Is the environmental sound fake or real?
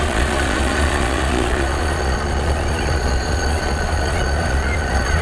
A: fake